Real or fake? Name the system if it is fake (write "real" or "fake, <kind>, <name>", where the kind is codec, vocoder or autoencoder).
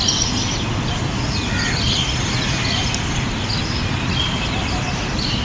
real